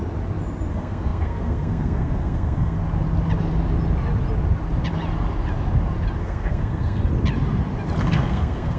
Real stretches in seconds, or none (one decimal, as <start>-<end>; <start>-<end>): 0.0-0.7; 2.8-6.2; 7.0-8.0